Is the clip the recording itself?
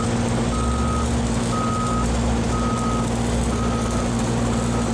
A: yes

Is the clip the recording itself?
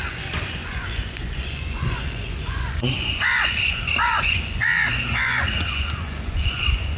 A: no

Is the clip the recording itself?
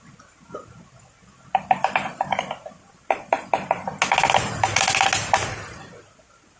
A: yes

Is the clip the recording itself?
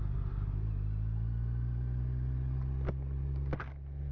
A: yes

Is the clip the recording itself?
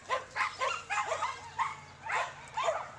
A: yes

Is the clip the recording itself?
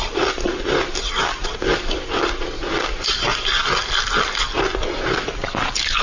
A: yes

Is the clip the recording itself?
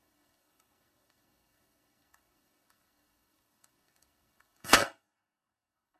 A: no